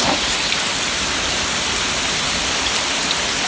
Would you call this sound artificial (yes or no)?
no